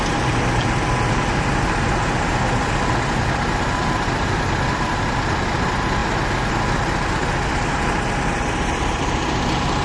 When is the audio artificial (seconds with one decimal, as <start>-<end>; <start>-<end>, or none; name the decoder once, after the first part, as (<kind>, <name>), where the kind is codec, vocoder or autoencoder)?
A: 0.0-6.0 (vocoder, BigVGAN v2); 6.5-9.8